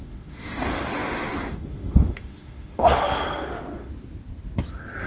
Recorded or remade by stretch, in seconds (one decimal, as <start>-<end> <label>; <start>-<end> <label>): 0.0-3.9 remade; 3.9-5.1 recorded